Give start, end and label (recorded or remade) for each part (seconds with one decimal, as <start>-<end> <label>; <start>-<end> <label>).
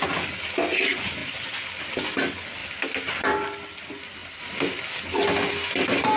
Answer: 0.0-6.2 recorded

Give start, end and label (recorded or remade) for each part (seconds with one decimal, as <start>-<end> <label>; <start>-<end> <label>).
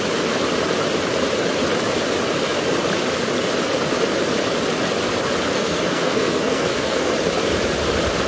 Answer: 0.0-5.5 recorded; 5.5-7.1 remade; 7.1-8.3 recorded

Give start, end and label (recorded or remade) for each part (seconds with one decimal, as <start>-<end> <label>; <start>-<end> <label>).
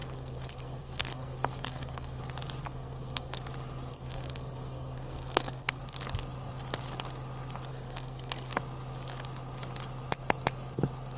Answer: 0.0-2.2 remade; 2.2-2.6 recorded; 2.6-3.4 remade; 3.4-3.9 recorded; 3.9-5.8 remade; 5.8-7.7 recorded; 7.7-8.5 remade; 8.5-11.2 recorded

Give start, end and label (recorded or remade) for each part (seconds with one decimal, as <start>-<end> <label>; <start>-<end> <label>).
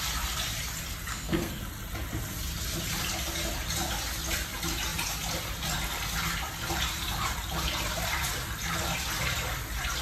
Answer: 0.0-1.1 recorded; 1.1-1.6 remade; 1.6-10.0 recorded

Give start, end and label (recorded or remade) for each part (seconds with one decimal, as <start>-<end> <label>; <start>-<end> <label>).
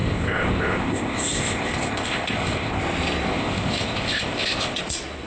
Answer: 0.0-2.8 remade; 2.8-3.3 recorded; 3.3-4.8 remade; 4.8-5.3 recorded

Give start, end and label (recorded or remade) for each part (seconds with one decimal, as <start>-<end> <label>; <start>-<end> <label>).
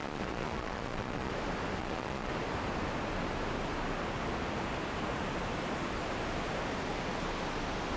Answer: 0.0-1.3 remade; 1.3-1.8 recorded; 1.8-2.3 remade; 2.3-8.0 recorded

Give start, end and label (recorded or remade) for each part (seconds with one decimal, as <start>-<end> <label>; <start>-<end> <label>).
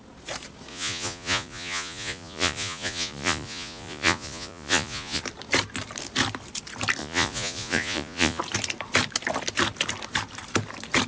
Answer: 0.0-0.7 recorded; 0.7-5.2 remade; 5.2-7.0 recorded; 7.0-8.4 remade; 8.4-11.1 recorded